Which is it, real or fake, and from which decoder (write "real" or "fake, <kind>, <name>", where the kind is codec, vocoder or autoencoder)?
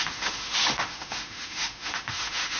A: fake, autoencoder, DAC-VAE